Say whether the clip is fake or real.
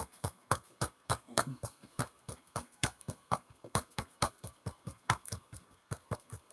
fake